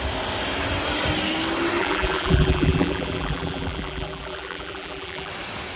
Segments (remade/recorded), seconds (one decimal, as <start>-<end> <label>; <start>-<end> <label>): 0.0-1.8 recorded; 1.8-5.3 remade; 5.3-5.8 recorded